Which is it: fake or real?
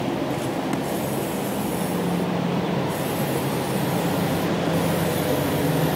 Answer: real